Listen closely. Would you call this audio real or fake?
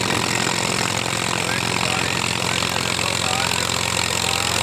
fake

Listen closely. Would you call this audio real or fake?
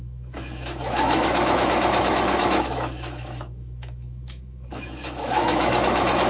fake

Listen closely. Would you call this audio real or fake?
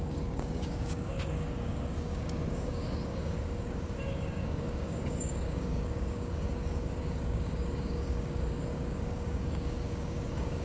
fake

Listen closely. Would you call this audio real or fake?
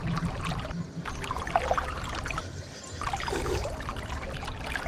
real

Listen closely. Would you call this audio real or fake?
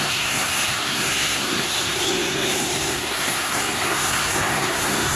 fake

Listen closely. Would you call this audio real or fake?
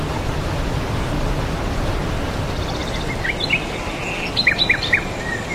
real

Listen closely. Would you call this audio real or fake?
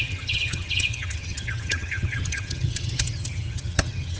fake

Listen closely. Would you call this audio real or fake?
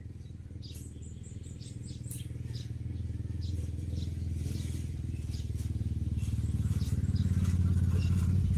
real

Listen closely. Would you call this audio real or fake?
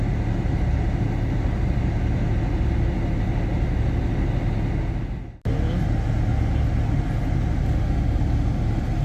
real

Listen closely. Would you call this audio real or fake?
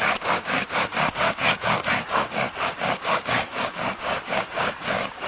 fake